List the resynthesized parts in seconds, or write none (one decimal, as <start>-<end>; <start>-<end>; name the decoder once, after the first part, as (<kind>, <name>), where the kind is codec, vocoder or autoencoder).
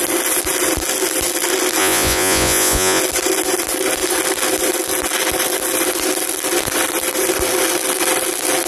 1.8-3.0 (vocoder, Vocos)